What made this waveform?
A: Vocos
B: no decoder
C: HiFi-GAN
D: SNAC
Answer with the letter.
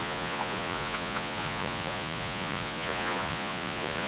A